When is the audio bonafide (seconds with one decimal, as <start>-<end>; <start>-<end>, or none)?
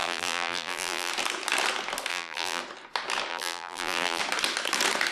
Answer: 1.1-2.1; 2.6-3.3; 4.2-5.1